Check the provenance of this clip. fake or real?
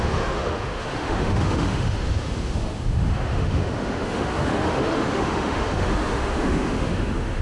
fake